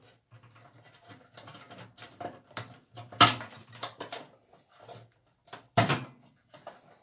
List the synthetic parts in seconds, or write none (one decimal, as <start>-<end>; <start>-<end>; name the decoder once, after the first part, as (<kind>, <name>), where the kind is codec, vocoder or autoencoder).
none